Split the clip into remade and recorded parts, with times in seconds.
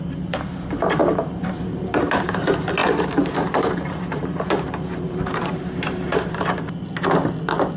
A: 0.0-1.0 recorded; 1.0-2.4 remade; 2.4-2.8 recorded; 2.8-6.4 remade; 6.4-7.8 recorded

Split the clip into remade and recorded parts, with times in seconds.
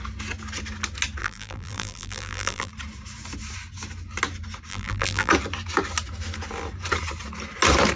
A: 0.0-1.2 recorded; 1.2-2.7 remade; 2.7-4.7 recorded; 4.7-5.3 remade; 5.3-8.0 recorded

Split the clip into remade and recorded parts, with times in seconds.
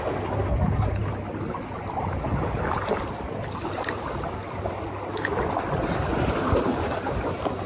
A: 0.0-6.1 recorded; 6.1-7.7 remade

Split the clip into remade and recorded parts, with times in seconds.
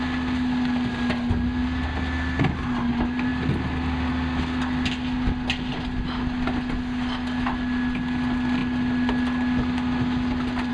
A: 0.0-10.7 recorded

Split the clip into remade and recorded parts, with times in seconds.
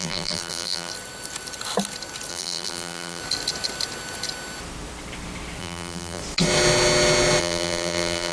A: 0.0-0.9 remade; 0.9-2.3 recorded; 2.3-3.2 remade; 3.2-5.6 recorded; 5.6-6.2 remade; 6.2-7.4 recorded; 7.4-8.3 remade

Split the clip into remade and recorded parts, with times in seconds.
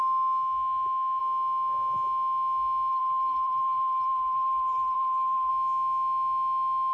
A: 0.0-2.9 recorded; 2.9-5.5 remade; 5.5-6.9 recorded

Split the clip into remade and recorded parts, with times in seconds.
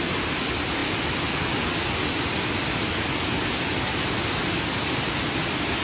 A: 0.0-5.8 recorded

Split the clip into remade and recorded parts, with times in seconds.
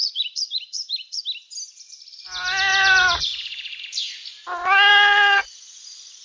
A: 0.0-1.2 remade; 1.2-2.7 recorded; 2.7-3.8 remade; 3.8-4.9 recorded; 4.9-5.4 remade; 5.4-6.2 recorded